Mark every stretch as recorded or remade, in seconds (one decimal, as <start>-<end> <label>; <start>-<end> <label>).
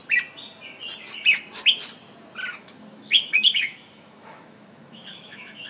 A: 0.0-2.5 recorded; 2.5-5.7 remade